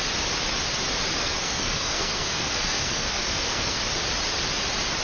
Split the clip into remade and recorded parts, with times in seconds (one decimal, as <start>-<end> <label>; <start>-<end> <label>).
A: 0.0-1.2 recorded; 1.2-3.8 remade; 3.8-5.0 recorded